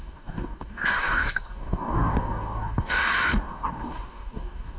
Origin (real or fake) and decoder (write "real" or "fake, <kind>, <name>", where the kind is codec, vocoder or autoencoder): fake, codec, DAC